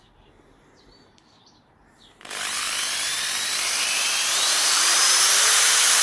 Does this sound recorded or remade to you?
remade